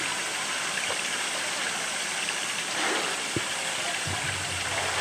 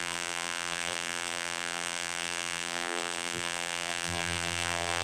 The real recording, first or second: first